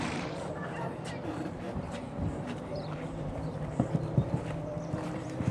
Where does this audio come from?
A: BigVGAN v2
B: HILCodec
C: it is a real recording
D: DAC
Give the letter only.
A